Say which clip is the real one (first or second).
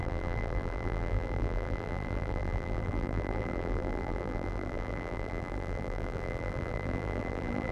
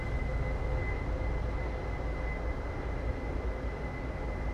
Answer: second